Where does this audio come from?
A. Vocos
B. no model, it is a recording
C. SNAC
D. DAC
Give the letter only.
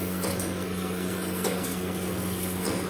C